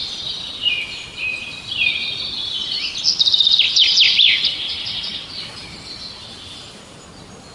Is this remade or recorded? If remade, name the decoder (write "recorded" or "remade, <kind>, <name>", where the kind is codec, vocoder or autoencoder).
recorded